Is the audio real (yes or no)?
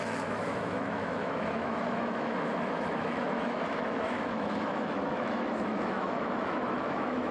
no